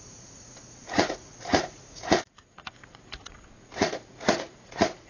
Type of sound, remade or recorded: remade